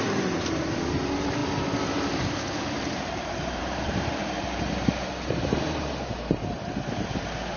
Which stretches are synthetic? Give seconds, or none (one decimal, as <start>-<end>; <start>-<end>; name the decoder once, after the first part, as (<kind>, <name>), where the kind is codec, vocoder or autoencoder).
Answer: 0.0-7.6 (vocoder, BigVGAN v2)